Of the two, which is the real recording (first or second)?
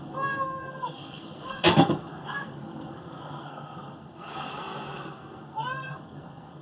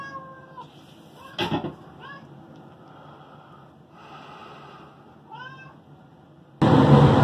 second